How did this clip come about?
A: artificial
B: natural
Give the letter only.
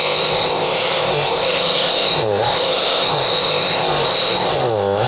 A